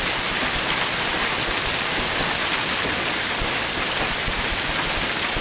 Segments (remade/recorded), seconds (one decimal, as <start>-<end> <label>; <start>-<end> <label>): 0.0-5.4 recorded